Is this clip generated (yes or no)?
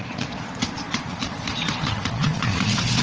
yes